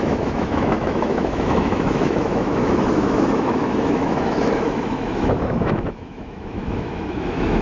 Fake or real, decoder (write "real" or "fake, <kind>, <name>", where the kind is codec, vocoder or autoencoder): fake, autoencoder, DAC-VAE